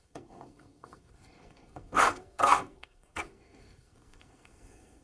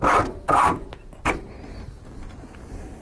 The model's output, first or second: first